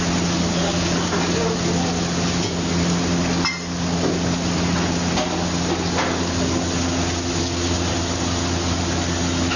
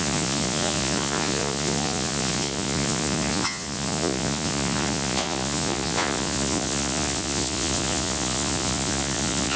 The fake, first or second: second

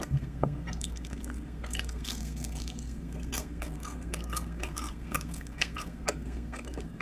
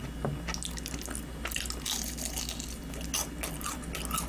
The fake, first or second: first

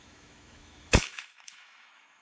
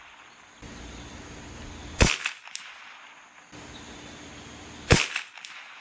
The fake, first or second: first